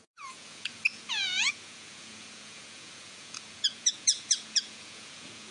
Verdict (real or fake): fake